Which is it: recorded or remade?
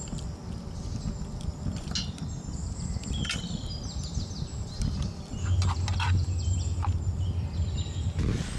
recorded